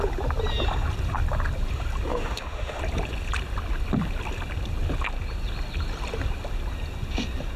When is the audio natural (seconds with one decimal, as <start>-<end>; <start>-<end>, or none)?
0.0-2.1; 2.8-7.6